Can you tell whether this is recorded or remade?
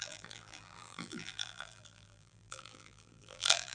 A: remade